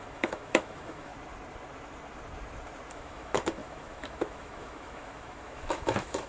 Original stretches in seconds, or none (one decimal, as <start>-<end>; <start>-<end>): 1.1-2.9

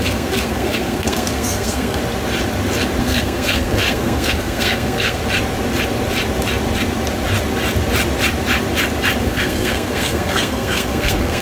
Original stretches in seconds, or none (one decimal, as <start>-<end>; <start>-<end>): 2.0-3.0; 5.2-9.2

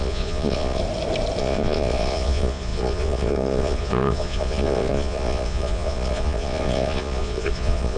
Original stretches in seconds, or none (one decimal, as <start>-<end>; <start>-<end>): 0.8-1.4